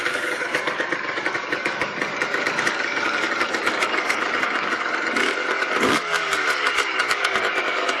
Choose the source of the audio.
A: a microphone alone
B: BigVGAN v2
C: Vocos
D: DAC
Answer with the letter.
D